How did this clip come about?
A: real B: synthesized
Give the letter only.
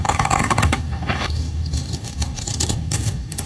B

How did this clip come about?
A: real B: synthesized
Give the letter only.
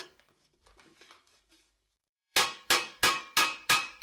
B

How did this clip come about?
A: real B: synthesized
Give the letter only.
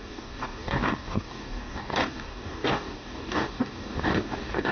B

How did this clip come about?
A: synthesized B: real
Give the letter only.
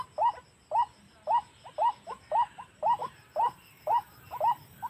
B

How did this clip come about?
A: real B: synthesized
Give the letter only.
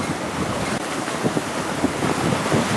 A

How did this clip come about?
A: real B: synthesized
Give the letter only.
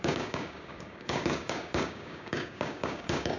B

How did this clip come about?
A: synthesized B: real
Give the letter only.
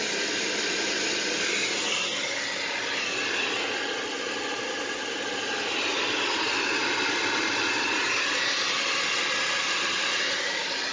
B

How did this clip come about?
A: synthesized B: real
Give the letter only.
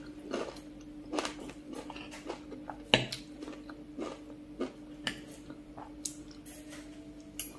B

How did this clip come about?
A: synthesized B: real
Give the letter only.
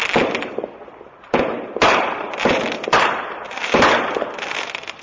B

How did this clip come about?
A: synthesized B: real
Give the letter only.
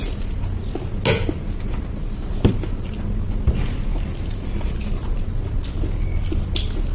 B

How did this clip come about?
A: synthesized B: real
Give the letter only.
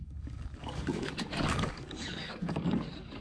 A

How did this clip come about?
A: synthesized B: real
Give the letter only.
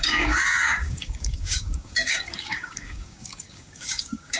A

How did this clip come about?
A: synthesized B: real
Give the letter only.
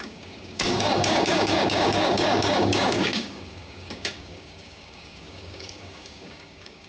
A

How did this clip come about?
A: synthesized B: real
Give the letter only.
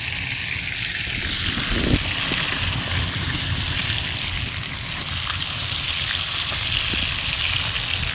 B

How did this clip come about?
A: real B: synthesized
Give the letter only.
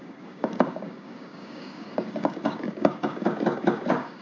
B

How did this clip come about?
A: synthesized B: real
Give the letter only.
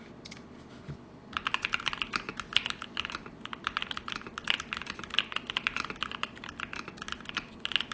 B